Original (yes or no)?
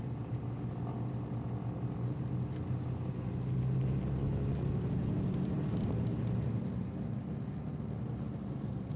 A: yes